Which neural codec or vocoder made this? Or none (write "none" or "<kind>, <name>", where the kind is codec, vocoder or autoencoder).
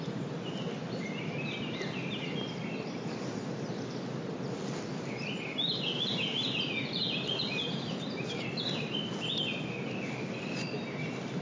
none